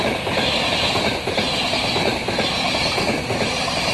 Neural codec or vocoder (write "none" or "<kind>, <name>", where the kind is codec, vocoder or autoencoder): none